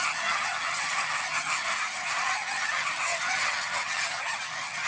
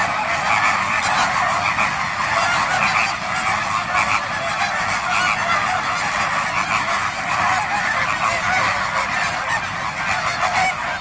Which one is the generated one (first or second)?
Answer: first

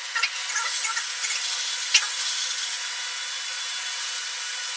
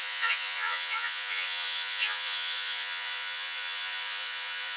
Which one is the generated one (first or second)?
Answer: second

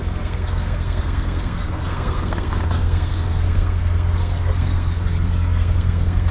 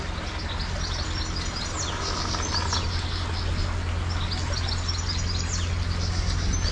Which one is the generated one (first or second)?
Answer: first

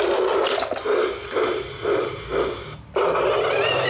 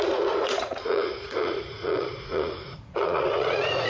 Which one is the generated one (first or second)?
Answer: second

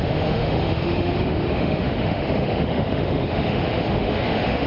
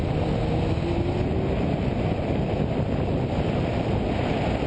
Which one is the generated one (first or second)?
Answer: first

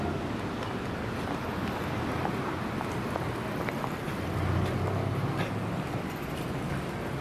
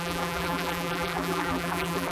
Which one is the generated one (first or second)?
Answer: second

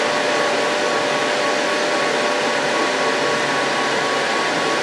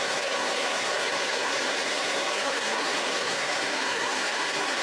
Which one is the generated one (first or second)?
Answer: second